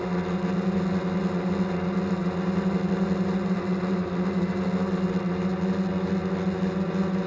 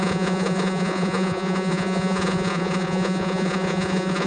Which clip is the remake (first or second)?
second